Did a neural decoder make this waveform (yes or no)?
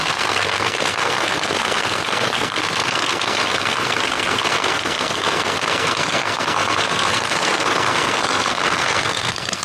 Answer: yes